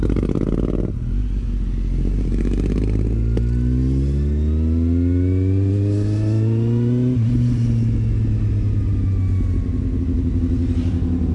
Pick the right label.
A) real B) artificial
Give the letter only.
A